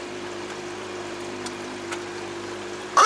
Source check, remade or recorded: remade